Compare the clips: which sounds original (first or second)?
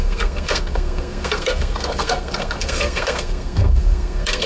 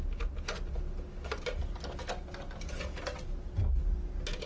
second